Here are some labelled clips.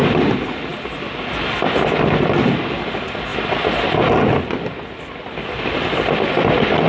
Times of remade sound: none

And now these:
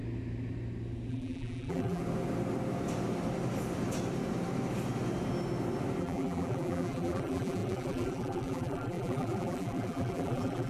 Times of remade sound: 1.1-2.0 (vocoder, BigVGAN v2); 6.0-10.7

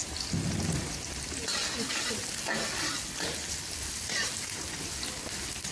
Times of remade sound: none

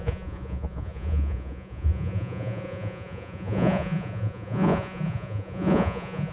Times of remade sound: 0.0-6.3 (vocoder, Vocos)

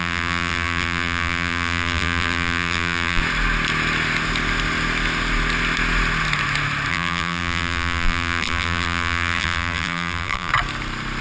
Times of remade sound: 0.0-3.2 (vocoder, BigVGAN v2); 6.9-10.5

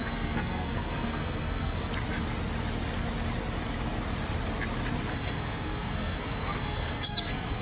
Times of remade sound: 0.0-1.9 (codec, SNAC); 5.1-7.6

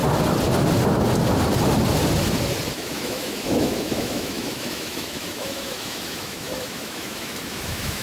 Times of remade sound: 2.7-8.0 (autoencoder, DAC-VAE)

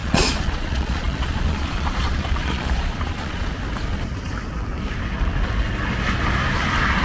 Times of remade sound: 0.0-3.5 (vocoder, Vocos)